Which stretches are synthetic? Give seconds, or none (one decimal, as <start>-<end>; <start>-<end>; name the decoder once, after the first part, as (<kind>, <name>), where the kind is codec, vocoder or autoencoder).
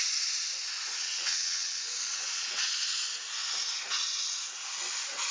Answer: 1.0-2.7 (vocoder, WaveNeXt)